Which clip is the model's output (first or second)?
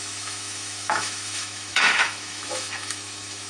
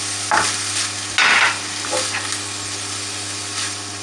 first